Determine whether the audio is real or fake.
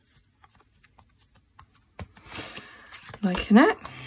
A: real